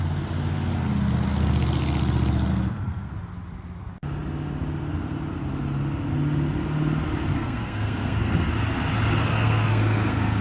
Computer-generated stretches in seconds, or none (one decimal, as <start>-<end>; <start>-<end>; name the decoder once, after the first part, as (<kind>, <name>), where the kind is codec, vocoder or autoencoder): 2.5-3.1 (codec, SNAC); 7.3-8.5; 9.3-10.4